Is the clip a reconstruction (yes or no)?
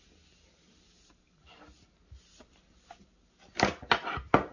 no